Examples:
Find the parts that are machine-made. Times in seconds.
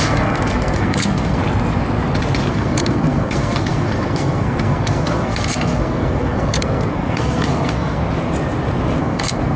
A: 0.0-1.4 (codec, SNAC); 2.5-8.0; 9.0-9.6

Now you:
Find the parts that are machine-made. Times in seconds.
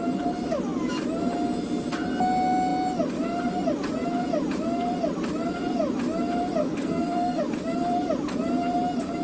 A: 6.6-7.4 (codec, SNAC)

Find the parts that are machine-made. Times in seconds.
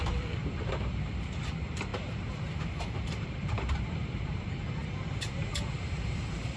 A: 0.0-6.6 (vocoder, BigVGAN v2)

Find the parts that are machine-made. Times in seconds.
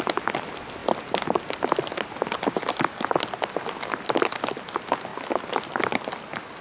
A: none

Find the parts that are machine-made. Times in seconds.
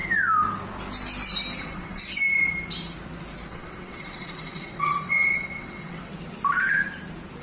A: 1.6-2.1 (vocoder, WaveNeXt); 3.5-6.1